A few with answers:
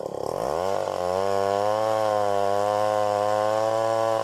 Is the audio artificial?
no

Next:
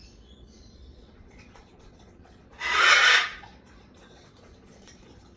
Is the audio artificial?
yes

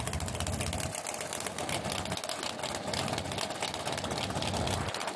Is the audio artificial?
no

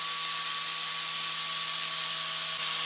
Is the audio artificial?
no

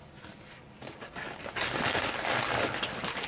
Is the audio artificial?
no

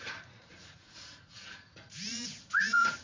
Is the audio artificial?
yes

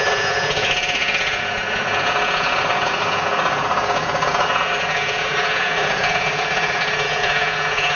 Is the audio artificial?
yes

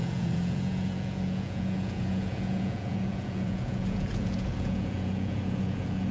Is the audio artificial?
yes